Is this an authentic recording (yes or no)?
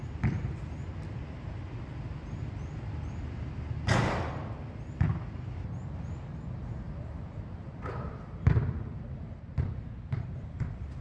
yes